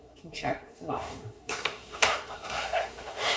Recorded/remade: remade